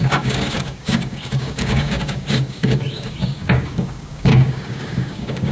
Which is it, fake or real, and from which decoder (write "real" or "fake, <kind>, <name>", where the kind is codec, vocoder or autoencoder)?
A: fake, codec, DAC